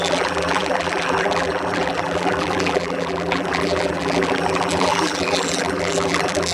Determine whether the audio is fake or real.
fake